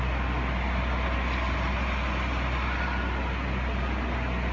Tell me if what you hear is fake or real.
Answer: real